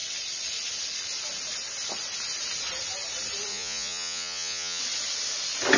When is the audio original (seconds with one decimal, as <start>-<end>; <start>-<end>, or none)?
0.0-3.5; 4.8-5.8